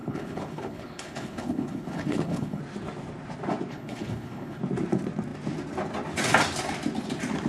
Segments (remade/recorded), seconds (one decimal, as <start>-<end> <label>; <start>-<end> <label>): 0.0-2.6 remade; 2.6-3.7 recorded; 3.7-4.6 remade; 4.6-7.5 recorded